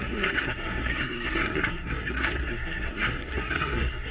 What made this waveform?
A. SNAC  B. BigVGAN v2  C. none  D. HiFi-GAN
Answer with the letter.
A